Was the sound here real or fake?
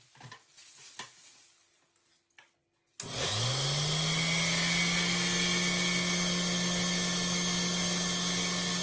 real